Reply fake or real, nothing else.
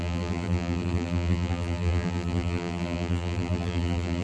fake